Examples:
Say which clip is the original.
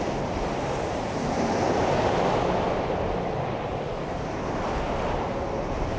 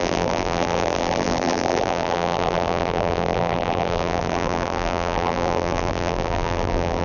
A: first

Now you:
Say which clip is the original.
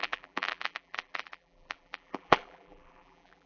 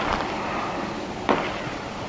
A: second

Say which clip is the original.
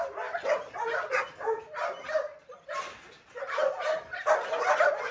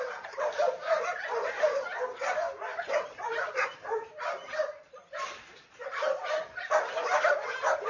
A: first